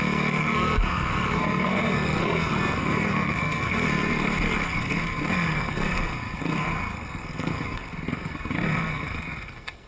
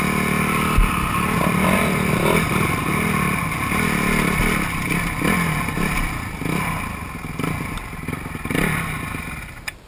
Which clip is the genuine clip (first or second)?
second